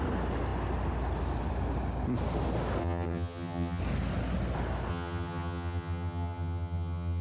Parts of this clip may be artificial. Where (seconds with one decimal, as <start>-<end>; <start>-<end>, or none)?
2.8-3.8; 4.9-7.2